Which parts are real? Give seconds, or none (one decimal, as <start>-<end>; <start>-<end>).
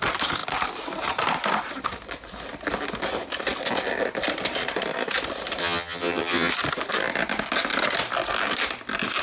0.0-5.6; 6.5-9.2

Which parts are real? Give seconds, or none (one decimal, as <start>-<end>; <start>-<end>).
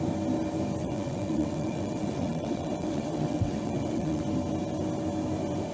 0.0-0.8; 4.2-5.7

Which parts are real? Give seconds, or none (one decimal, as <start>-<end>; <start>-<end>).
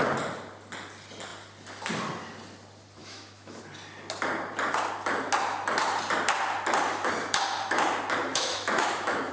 0.0-3.0; 3.6-8.3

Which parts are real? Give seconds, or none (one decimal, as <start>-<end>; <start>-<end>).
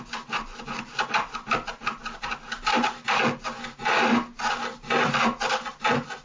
0.0-6.2